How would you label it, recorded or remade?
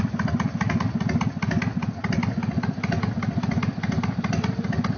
recorded